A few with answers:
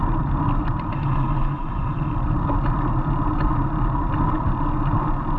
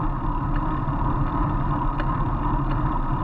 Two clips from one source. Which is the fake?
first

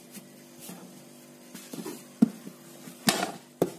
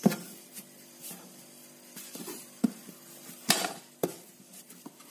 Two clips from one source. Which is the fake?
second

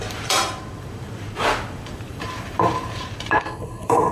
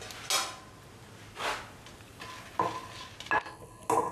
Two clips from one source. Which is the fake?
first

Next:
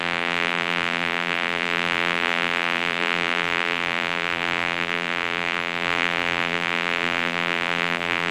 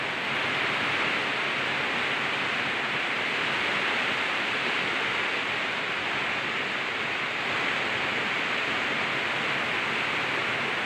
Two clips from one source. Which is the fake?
first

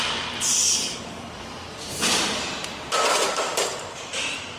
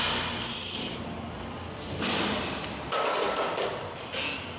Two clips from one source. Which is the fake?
first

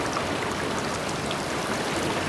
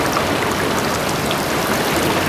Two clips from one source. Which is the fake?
first